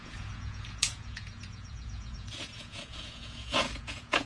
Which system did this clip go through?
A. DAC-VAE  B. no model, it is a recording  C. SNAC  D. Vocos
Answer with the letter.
D